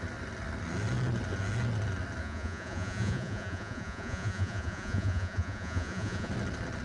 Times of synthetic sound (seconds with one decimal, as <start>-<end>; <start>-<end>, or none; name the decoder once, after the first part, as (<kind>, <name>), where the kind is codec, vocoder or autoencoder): 2.2-6.3 (vocoder, Vocos)